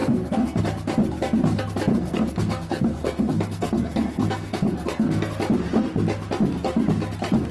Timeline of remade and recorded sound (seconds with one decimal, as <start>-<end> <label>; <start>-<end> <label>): 0.0-0.6 remade; 0.6-1.9 recorded; 1.9-5.3 remade; 5.3-7.5 recorded